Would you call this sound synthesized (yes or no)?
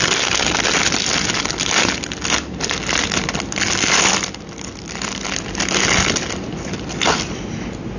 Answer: no